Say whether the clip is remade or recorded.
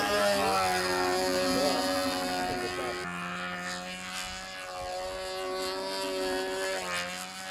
recorded